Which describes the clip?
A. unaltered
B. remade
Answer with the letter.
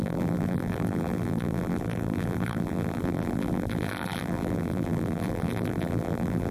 B